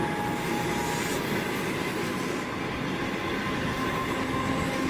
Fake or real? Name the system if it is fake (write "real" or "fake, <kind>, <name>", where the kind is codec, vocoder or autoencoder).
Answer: real